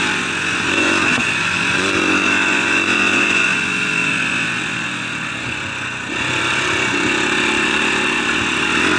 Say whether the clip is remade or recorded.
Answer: remade